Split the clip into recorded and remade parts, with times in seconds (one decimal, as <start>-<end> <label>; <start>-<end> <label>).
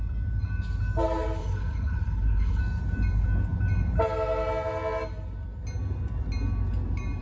0.0-1.4 recorded; 1.4-2.6 remade; 2.6-7.2 recorded